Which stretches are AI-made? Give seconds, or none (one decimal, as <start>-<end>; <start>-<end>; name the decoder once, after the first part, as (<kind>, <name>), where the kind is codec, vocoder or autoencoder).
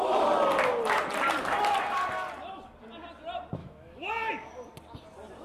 3.6-4.1 (autoencoder, DAC-VAE)